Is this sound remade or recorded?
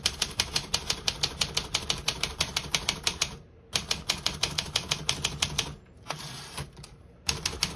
remade